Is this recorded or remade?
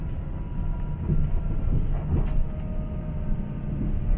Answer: recorded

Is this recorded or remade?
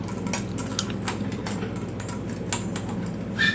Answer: recorded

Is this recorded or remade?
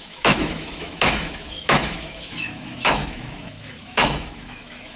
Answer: remade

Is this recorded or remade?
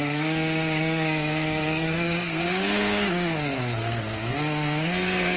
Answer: remade